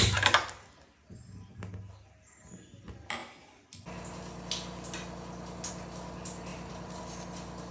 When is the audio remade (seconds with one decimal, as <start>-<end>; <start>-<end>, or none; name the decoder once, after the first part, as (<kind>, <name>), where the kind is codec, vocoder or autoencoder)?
6.5-7.0 (vocoder, BigVGAN v2)